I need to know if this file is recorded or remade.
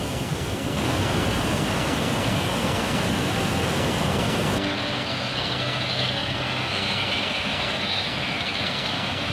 remade